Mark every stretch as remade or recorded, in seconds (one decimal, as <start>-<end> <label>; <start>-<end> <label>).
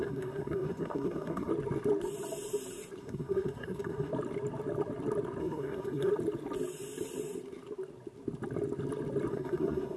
0.0-1.5 remade; 1.5-3.0 recorded; 3.0-4.1 remade; 4.1-5.4 recorded; 5.4-6.1 remade; 6.1-9.3 recorded; 9.3-10.0 remade